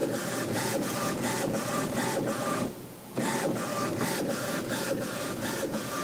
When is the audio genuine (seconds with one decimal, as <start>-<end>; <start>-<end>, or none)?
3.7-4.2